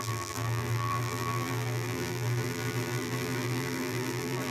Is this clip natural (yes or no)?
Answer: no